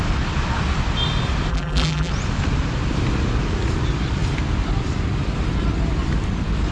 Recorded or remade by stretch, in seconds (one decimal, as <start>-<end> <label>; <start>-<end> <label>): 0.0-1.5 recorded; 1.5-2.1 remade; 2.1-6.7 recorded